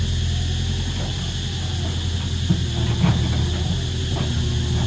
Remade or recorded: recorded